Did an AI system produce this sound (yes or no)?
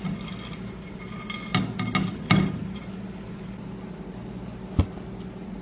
no